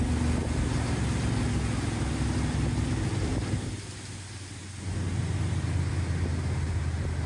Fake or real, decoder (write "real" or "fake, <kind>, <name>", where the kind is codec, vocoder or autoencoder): real